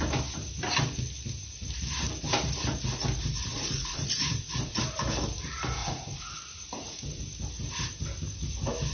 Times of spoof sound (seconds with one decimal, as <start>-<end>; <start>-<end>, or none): 3.5-4.8; 5.8-7.2